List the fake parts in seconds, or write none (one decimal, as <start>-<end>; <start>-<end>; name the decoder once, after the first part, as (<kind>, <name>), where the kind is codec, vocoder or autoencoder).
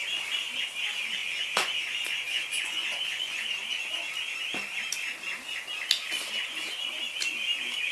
1.2-3.5 (vocoder, Vocos)